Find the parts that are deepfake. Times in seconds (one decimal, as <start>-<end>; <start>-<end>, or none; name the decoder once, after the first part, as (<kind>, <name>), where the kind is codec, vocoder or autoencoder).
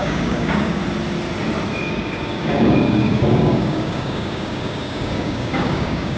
0.0-0.8 (codec, DAC); 1.9-6.2